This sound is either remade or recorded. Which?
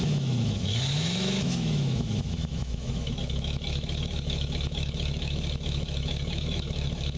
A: remade